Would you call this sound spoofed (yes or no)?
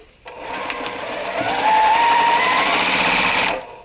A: yes